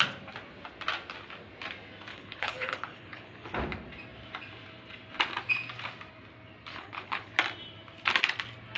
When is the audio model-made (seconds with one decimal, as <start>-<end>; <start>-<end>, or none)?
2.1-3.6; 6.7-7.3